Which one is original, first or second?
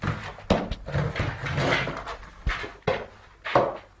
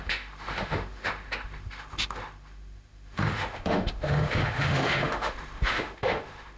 first